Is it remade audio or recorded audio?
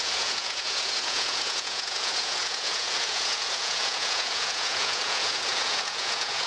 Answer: remade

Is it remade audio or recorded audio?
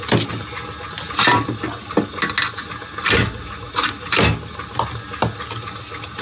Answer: recorded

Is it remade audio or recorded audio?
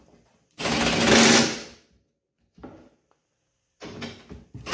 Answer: recorded